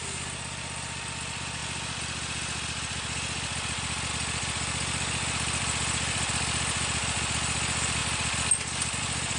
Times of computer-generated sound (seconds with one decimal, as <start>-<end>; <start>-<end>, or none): none